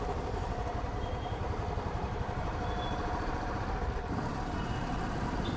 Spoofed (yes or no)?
yes